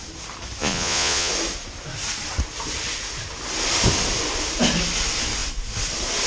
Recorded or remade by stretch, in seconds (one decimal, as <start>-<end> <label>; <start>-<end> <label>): 0.0-0.6 recorded; 0.6-1.3 remade; 1.3-6.3 recorded